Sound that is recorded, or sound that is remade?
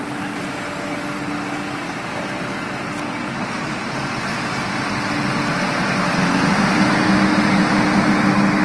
recorded